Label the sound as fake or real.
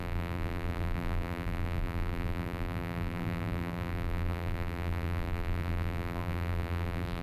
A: fake